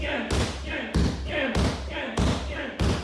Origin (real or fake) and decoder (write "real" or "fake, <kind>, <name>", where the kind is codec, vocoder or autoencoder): real